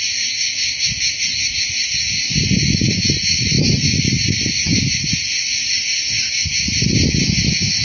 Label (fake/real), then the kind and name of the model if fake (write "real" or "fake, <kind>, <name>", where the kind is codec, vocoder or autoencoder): real